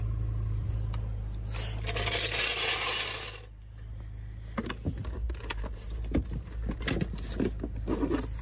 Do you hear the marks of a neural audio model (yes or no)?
no